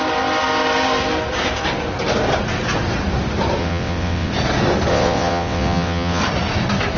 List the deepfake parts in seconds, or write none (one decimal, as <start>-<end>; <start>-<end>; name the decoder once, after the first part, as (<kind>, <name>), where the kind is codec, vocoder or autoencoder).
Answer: 3.6-4.3 (vocoder, WaveNeXt); 4.9-6.2